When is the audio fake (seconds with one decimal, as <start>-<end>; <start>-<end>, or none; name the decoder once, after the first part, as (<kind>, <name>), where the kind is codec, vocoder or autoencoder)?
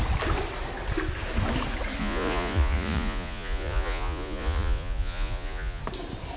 2.0-5.8 (vocoder, Vocos)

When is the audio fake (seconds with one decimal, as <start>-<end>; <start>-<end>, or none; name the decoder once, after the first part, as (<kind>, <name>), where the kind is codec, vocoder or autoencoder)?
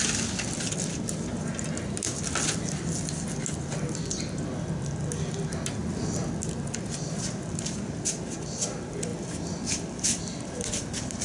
5.8-6.3 (vocoder, BigVGAN v2)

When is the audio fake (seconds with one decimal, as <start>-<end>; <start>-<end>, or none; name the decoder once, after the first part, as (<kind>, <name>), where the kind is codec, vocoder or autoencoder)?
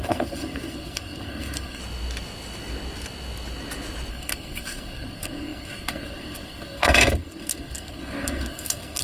0.0-1.8 (codec, SNAC); 4.1-9.0